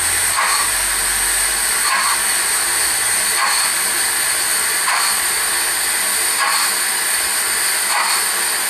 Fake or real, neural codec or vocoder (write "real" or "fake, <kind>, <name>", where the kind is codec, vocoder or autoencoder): real